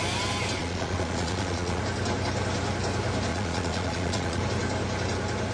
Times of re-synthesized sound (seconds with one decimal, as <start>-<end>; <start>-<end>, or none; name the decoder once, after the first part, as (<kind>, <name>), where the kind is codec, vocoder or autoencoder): 0.6-1.8 (vocoder, Vocos); 3.3-4.4